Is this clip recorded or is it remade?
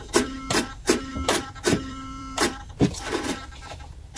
remade